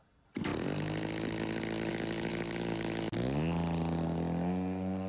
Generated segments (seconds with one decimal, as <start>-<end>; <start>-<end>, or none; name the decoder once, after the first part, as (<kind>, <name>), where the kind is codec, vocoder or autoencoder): none